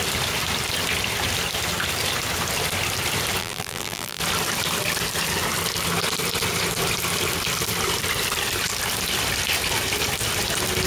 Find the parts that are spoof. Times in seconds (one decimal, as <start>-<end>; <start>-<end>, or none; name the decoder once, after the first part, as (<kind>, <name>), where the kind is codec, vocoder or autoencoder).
3.4-4.2 (vocoder, BigVGAN v2)